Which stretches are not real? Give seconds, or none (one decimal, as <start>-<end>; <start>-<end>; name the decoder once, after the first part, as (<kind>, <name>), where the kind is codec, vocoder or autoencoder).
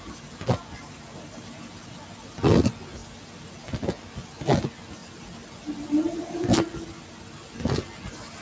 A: none